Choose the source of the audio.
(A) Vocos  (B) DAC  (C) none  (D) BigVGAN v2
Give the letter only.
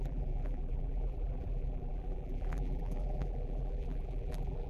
D